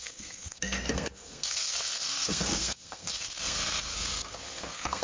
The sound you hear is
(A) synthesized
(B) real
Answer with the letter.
A